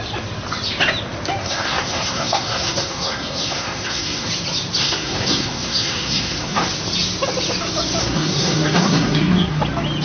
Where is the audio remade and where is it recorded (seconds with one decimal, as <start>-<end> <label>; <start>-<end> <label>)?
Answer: 0.0-1.4 recorded; 1.4-4.3 remade; 4.3-4.8 recorded; 4.8-6.6 remade; 6.6-8.0 recorded; 8.0-9.6 remade; 9.6-10.0 recorded